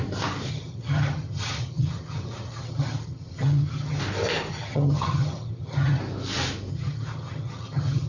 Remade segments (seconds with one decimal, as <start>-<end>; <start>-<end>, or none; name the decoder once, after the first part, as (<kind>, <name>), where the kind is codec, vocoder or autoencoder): 0.5-4.0 (vocoder, HiFi-GAN); 4.5-6.0; 6.7-8.1